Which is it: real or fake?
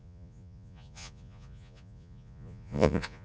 fake